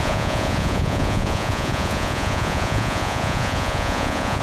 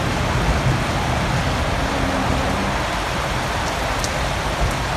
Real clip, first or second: second